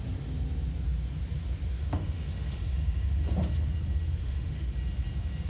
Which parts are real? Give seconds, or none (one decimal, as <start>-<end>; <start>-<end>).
0.0-1.8; 3.2-4.2; 4.7-5.5